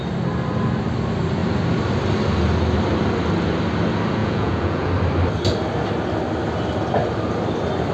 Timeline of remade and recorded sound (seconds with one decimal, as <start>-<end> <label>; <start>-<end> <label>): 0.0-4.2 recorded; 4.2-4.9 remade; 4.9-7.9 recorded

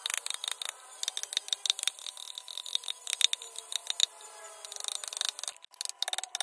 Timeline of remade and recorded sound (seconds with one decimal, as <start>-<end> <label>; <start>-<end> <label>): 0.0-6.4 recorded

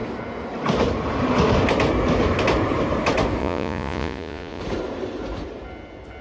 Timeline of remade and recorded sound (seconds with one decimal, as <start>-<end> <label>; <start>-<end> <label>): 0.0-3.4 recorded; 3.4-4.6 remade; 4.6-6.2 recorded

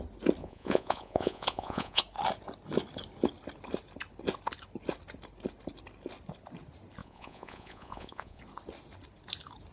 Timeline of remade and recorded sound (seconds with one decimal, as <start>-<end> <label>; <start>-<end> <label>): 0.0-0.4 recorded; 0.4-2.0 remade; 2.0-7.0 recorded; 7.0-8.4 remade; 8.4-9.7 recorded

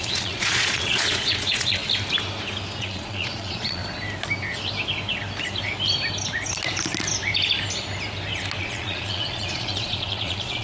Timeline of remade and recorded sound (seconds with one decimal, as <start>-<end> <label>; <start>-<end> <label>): 0.0-1.8 remade; 1.8-2.8 recorded; 2.8-3.8 remade; 3.8-8.6 recorded; 8.6-10.6 remade